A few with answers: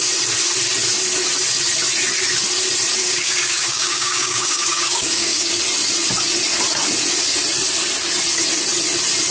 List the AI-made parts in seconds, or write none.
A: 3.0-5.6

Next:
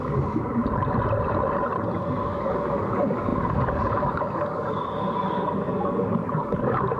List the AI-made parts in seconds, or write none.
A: 0.0-0.6; 2.0-7.0

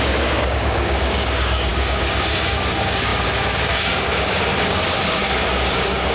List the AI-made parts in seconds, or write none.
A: 0.0-6.1

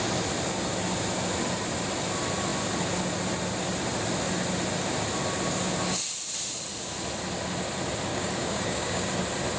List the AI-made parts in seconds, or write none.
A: 8.1-9.1

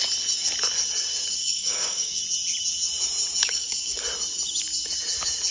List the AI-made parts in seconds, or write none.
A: 1.1-2.2; 3.4-4.0